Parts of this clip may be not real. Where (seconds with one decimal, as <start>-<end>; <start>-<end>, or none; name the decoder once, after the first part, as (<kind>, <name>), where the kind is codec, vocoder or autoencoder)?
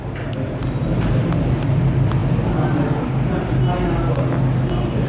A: none